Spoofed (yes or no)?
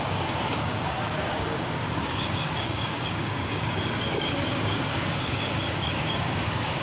yes